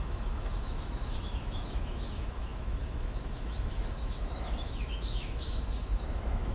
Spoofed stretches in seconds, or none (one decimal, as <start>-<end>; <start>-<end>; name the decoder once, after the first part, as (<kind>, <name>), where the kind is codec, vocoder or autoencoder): 0.0-6.5 (autoencoder, DAC-VAE)